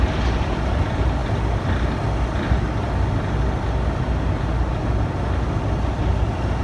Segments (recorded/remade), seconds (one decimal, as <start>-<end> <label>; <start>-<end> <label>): 0.0-6.6 recorded